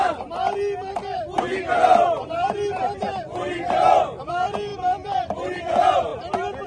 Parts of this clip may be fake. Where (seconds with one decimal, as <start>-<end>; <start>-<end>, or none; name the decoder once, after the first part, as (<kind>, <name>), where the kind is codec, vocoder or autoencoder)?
2.2-3.9 (vocoder, BigVGAN v2)